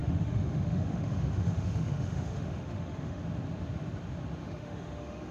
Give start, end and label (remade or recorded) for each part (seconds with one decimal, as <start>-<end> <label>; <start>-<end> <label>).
0.0-3.2 remade; 3.2-4.4 recorded; 4.4-5.3 remade